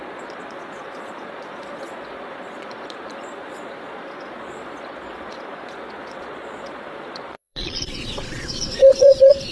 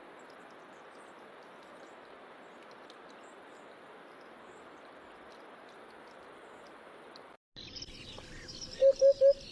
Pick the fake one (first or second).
first